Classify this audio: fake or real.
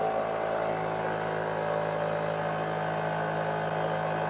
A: real